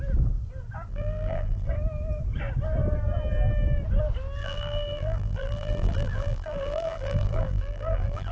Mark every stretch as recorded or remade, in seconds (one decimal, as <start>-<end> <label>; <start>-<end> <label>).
0.0-0.9 recorded; 0.9-1.7 remade; 1.7-4.4 recorded; 4.4-8.3 remade